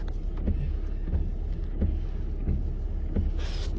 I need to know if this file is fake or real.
real